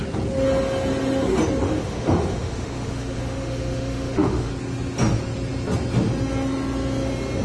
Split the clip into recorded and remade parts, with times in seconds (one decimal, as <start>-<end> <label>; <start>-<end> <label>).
0.0-1.6 recorded; 1.6-4.5 remade; 4.5-7.4 recorded